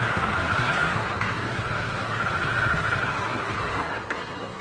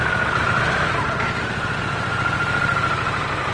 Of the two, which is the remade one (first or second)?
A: first